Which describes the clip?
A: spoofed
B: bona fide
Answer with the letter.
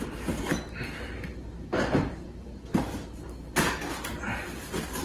B